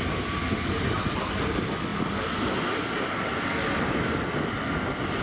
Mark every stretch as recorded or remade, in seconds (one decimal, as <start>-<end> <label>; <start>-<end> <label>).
0.0-5.2 recorded